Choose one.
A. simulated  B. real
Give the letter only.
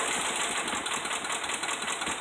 B